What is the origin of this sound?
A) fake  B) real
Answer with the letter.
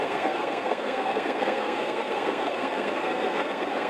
A